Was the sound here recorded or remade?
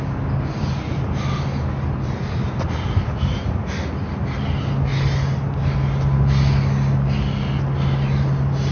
recorded